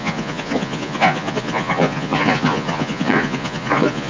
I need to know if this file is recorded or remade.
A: remade